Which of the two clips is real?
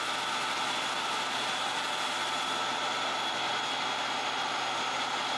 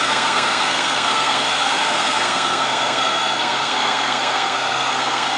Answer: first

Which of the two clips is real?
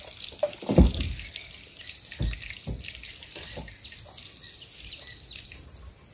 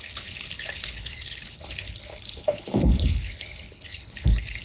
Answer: first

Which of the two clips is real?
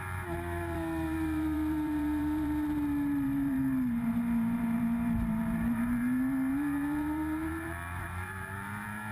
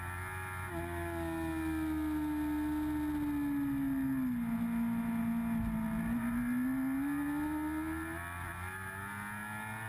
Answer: second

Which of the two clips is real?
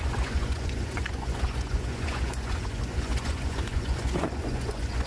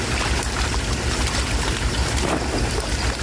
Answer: second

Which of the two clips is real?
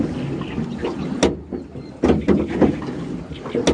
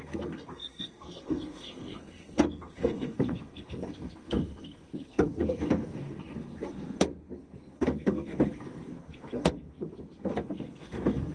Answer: first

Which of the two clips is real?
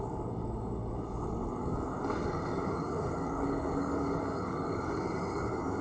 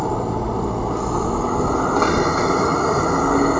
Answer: second